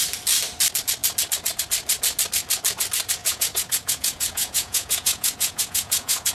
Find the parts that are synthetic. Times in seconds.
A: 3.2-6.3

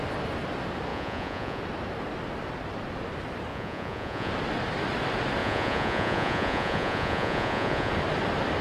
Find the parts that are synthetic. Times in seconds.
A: 0.9-1.6; 3.5-4.3; 5.4-7.9

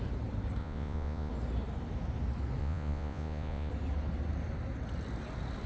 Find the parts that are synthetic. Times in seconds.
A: 0.6-1.3; 2.6-3.7

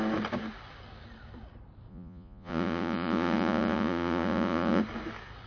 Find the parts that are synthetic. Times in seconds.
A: 1.9-4.8